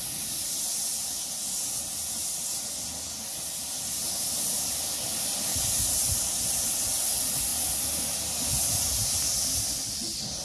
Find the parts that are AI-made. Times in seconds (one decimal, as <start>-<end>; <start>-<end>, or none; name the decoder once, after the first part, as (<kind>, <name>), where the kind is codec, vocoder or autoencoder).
none